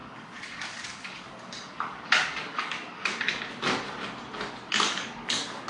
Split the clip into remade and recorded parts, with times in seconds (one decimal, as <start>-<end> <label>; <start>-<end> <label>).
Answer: 0.0-3.4 remade; 3.4-4.7 recorded; 4.7-5.7 remade